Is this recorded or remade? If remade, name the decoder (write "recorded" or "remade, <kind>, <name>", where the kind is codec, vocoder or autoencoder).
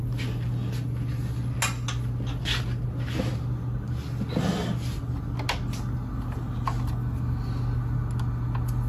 recorded